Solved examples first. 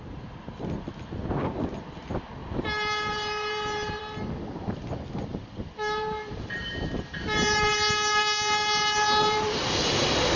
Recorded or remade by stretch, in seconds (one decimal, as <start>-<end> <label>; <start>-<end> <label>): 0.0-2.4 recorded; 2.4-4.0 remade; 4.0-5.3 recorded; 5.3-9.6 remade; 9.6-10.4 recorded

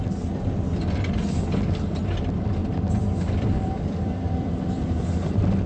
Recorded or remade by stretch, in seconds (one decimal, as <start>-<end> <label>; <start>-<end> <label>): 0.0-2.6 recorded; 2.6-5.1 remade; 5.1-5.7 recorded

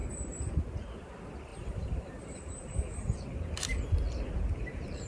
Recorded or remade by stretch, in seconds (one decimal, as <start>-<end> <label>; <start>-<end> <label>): 0.0-1.5 recorded; 1.5-3.2 remade; 3.2-5.1 recorded

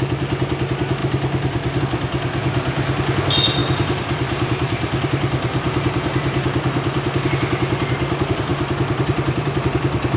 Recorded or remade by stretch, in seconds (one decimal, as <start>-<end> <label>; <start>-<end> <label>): 0.0-3.6 recorded; 3.6-7.3 remade; 7.3-8.5 recorded; 8.5-10.2 remade

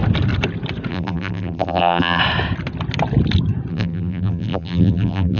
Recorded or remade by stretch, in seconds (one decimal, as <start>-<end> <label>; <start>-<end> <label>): 0.0-0.9 recorded; 0.9-2.2 remade; 2.2-3.7 recorded; 3.7-5.4 remade